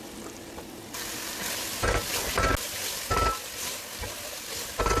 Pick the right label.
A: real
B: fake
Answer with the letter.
A